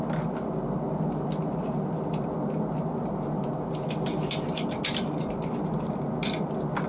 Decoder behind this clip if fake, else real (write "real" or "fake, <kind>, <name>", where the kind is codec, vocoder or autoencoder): real